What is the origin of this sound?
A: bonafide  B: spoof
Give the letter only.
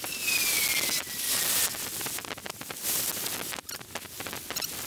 A